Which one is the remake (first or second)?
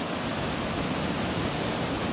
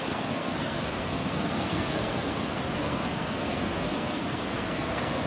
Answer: second